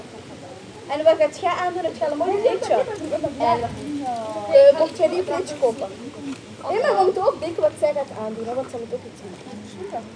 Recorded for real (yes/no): yes